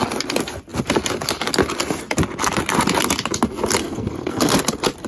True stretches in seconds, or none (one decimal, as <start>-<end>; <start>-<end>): 0.0-3.8; 4.5-5.1